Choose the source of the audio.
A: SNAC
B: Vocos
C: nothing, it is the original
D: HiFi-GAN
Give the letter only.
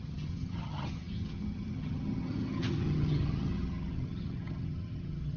D